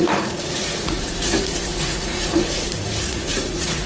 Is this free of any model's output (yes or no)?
no